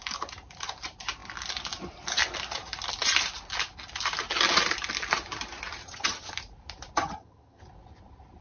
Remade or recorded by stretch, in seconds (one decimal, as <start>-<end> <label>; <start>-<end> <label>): 0.0-5.8 recorded; 5.8-6.3 remade; 6.3-7.0 recorded; 7.0-7.6 remade; 7.6-8.4 recorded